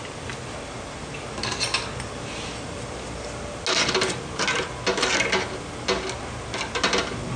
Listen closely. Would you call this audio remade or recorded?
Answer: recorded